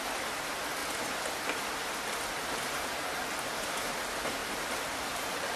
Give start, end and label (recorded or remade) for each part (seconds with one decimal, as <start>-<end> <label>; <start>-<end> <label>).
0.0-4.4 recorded; 4.4-5.6 remade